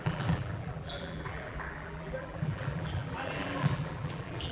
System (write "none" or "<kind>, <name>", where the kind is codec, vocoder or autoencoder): vocoder, BigVGAN v2